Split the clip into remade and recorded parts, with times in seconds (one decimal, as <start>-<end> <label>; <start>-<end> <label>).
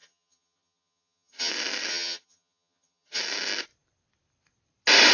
0.0-1.5 remade; 1.5-1.9 recorded; 1.9-3.2 remade; 3.2-5.1 recorded